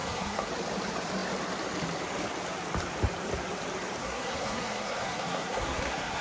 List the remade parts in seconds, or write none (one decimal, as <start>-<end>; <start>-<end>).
0.0-0.5; 4.0-6.2